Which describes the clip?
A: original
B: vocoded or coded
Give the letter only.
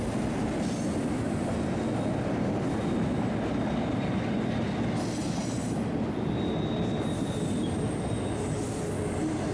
A